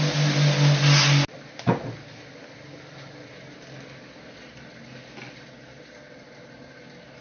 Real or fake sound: real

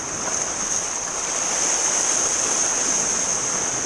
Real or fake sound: real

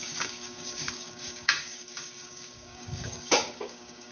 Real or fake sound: fake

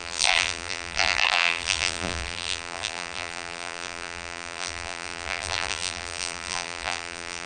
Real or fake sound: fake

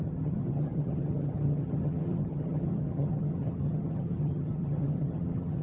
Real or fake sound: fake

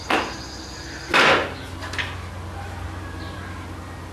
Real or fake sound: real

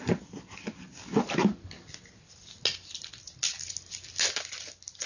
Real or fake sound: real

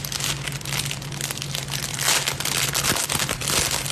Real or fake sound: real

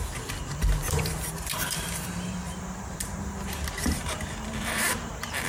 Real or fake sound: fake